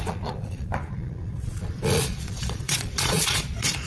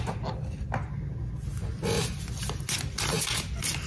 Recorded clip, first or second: second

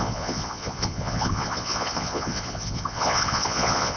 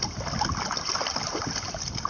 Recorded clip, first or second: second